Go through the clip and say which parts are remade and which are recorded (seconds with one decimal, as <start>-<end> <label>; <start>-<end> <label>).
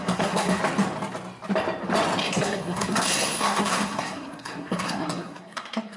0.0-0.6 remade; 0.6-2.2 recorded; 2.2-6.0 remade